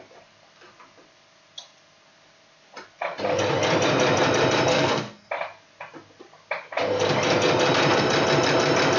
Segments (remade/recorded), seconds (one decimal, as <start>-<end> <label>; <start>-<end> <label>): 0.0-4.7 recorded; 4.7-5.3 remade; 5.3-9.0 recorded